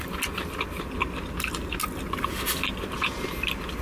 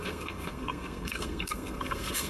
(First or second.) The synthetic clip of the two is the second